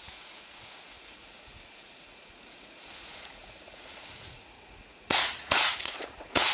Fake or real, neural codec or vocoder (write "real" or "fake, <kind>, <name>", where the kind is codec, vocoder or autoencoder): fake, vocoder, Vocos